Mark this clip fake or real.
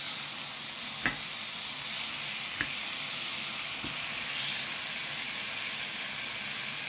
real